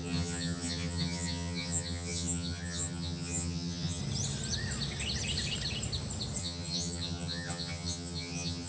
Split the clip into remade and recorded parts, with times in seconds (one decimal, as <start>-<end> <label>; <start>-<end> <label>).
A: 0.0-4.0 remade; 4.0-6.4 recorded; 6.4-8.7 remade